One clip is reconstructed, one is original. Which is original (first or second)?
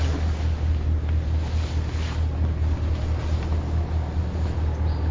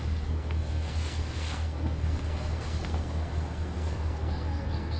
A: first